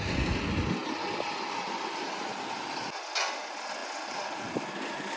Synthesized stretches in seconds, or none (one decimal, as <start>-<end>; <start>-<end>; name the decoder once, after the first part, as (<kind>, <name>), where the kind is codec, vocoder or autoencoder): none